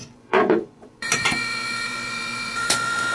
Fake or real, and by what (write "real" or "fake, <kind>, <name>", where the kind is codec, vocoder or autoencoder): fake, vocoder, Vocos